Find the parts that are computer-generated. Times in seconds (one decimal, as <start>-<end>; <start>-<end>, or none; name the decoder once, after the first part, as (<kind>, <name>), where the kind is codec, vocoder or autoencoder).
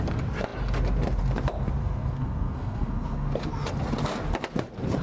1.8-3.5 (codec, SNAC)